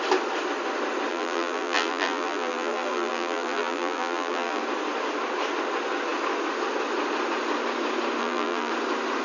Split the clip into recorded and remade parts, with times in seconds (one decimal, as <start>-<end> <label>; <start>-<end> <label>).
0.0-1.1 recorded; 1.1-4.6 remade; 4.6-8.2 recorded; 8.2-8.7 remade; 8.7-9.2 recorded